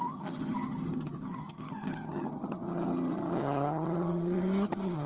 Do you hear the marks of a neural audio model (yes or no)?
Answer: yes